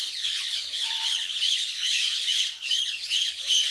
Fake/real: fake